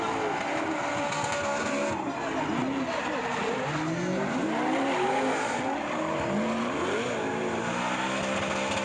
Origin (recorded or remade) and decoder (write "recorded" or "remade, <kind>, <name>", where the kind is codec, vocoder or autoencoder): recorded